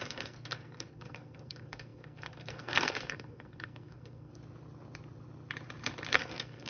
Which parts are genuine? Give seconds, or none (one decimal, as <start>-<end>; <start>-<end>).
4.3-6.1